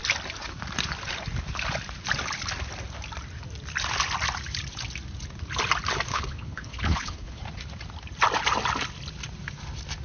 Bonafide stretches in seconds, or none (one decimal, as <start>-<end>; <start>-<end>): 0.0-6.1; 7.4-10.0